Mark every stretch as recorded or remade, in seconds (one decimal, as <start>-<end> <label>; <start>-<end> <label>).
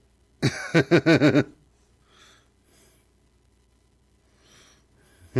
0.0-5.4 recorded